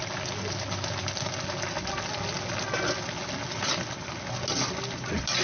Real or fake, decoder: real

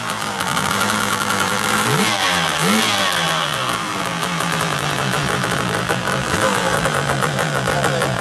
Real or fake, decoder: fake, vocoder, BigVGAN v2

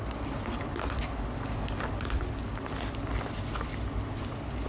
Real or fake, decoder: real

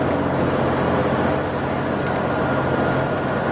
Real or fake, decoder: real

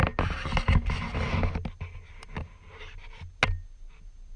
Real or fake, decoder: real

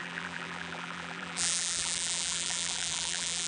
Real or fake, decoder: fake, vocoder, BigVGAN v2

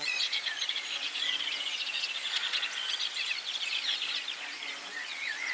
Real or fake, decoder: fake, vocoder, Vocos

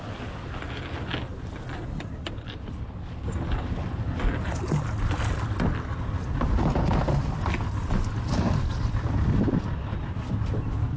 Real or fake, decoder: real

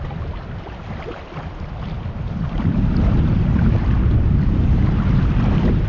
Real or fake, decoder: real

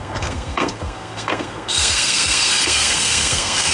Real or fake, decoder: fake, codec, SNAC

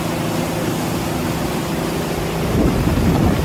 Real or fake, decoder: real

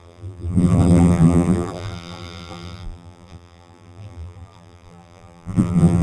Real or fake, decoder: fake, vocoder, BigVGAN v2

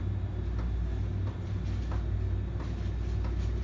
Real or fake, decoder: real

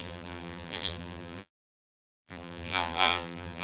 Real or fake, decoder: fake, vocoder, BigVGAN v2